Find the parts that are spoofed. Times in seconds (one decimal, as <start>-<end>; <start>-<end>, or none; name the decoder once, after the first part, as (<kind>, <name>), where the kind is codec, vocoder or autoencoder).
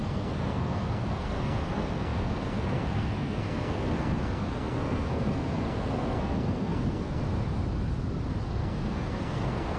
0.0-7.2 (codec, SNAC); 8.4-9.8